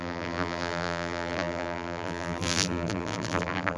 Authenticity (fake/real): fake